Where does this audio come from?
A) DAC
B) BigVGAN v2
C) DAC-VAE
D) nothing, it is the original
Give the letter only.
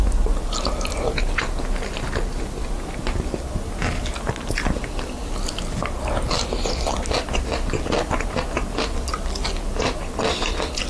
D